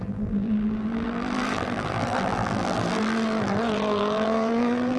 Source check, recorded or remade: remade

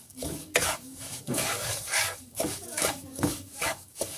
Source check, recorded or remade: remade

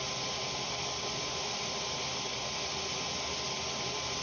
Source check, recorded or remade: recorded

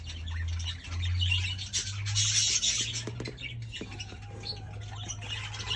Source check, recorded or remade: recorded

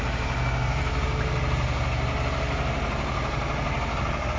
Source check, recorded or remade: recorded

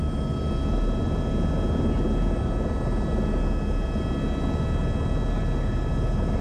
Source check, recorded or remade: recorded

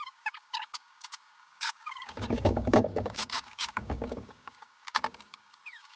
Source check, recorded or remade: remade